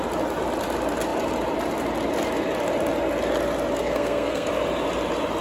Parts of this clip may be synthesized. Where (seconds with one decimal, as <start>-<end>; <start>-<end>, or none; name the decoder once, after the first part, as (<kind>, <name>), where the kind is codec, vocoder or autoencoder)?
3.8-4.5 (codec, SNAC)